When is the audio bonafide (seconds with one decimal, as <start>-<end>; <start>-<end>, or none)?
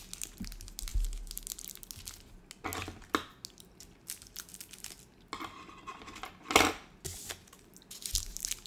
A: 0.0-8.7